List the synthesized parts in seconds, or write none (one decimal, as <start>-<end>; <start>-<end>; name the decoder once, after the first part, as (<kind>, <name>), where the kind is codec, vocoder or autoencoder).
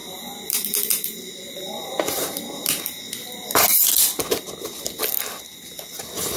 0.0-3.0 (vocoder, BigVGAN v2)